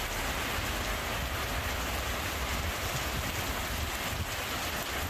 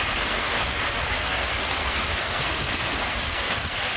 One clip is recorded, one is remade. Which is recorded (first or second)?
first